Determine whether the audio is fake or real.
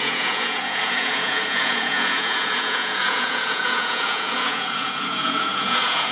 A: fake